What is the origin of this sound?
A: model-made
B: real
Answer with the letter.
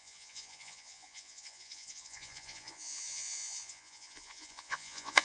A